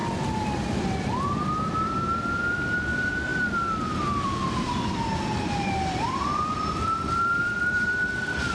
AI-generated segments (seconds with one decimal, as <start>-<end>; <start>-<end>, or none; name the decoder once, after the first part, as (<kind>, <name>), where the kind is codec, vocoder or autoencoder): 0.0-8.5 (vocoder, BigVGAN v2)